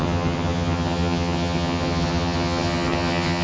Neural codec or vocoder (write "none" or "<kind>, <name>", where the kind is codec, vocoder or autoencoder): vocoder, HiFi-GAN